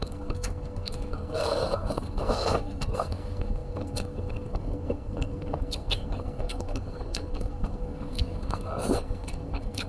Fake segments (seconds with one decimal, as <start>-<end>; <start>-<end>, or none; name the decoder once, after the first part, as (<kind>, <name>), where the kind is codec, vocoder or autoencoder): 0.0-9.9 (codec, SNAC)